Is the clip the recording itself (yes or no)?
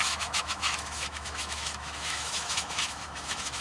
no